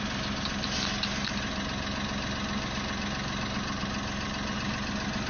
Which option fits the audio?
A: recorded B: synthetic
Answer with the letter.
A